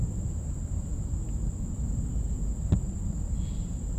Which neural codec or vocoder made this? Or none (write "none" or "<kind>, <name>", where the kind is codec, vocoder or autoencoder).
none